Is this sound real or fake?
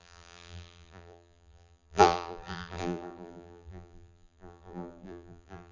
fake